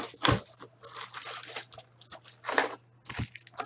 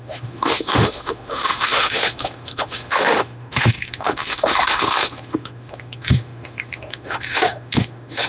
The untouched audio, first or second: first